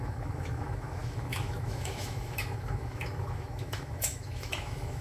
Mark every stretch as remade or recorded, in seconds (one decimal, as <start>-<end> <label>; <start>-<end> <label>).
0.0-5.0 remade